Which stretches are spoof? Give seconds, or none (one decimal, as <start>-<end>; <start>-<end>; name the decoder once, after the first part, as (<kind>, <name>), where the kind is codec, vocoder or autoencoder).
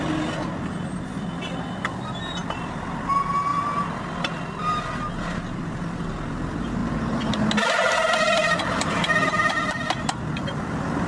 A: 3.5-4.8 (vocoder, BigVGAN v2)